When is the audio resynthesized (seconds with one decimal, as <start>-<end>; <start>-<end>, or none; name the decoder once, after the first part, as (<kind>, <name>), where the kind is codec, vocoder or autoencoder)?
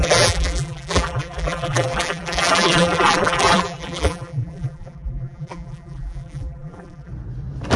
0.0-7.1 (vocoder, BigVGAN v2)